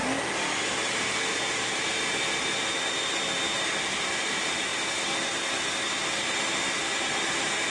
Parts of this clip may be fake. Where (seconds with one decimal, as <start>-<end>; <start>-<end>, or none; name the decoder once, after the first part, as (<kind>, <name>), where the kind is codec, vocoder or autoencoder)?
3.8-4.7 (vocoder, BigVGAN v2)